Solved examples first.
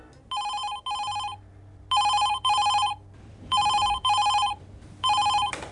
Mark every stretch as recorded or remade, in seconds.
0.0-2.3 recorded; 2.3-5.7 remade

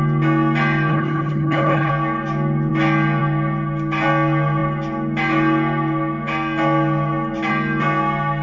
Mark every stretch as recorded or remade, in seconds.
0.0-0.9 recorded; 0.9-1.9 remade; 1.9-8.4 recorded

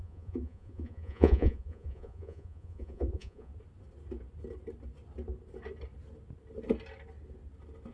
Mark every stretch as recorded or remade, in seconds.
0.0-3.5 remade; 3.5-7.9 recorded

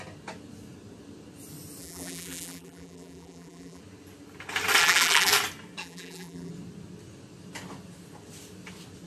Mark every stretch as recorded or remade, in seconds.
0.0-1.8 recorded; 1.8-3.8 remade; 3.8-4.8 recorded; 4.8-5.3 remade; 5.3-5.8 recorded; 5.8-6.5 remade; 6.5-9.1 recorded